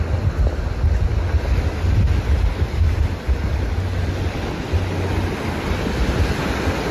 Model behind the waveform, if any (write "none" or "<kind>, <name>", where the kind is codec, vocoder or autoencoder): none